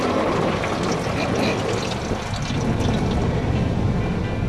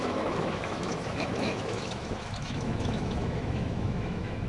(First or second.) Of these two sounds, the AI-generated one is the second